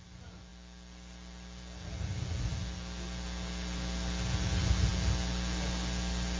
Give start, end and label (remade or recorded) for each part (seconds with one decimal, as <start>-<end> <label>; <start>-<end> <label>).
0.0-6.4 recorded